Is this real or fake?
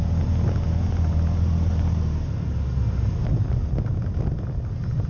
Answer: real